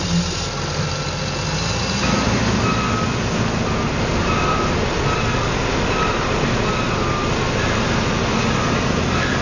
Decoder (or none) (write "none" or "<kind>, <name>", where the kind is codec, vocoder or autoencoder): none